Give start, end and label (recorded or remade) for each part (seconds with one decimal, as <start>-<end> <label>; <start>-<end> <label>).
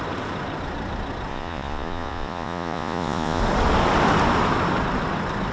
0.0-1.3 recorded; 1.3-3.4 remade; 3.4-5.5 recorded